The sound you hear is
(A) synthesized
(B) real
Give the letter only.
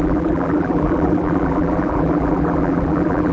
A